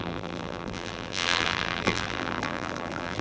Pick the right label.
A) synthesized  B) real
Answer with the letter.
A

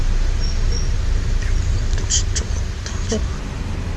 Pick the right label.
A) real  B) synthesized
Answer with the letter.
A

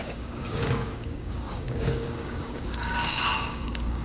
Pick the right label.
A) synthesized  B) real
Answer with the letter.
A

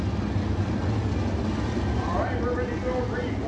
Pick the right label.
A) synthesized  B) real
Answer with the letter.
B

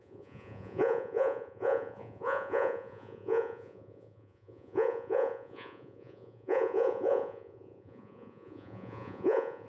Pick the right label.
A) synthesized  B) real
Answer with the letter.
A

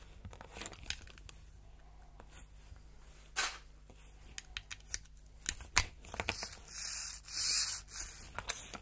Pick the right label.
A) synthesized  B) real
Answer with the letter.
B